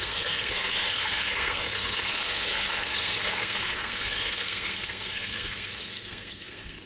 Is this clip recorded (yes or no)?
no